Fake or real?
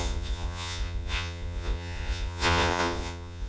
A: fake